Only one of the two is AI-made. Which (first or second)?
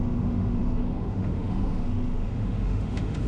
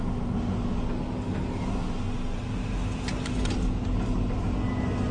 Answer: first